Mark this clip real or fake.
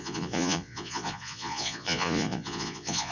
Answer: fake